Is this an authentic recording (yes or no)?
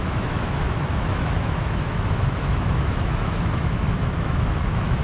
no